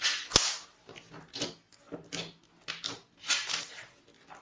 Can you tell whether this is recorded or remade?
recorded